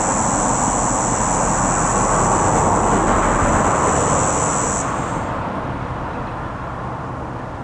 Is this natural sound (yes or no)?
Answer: yes